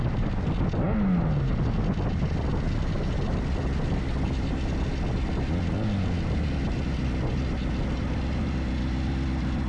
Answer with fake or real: real